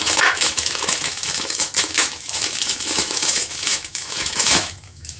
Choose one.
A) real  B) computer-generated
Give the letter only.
B